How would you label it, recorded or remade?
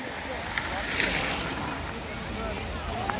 recorded